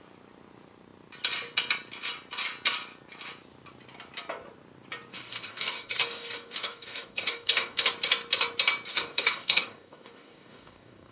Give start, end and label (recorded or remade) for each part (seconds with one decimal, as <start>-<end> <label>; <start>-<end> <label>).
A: 0.0-5.1 recorded; 5.1-7.9 remade; 7.9-8.9 recorded; 8.9-11.1 remade